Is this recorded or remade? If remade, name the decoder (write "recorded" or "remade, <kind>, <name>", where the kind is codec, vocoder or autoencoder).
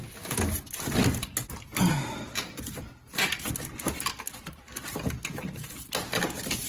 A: recorded